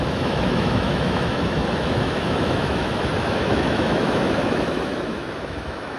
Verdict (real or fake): fake